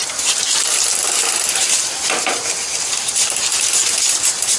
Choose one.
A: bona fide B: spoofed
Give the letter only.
A